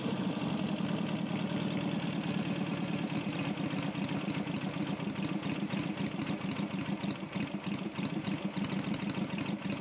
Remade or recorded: recorded